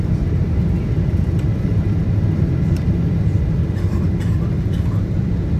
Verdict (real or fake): real